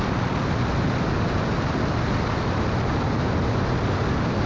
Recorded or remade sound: recorded